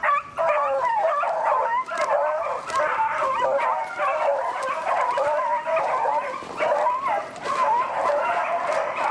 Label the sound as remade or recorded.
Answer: recorded